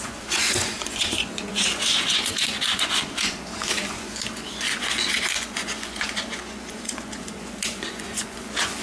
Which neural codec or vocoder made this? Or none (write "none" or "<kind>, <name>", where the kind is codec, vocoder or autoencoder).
vocoder, Vocos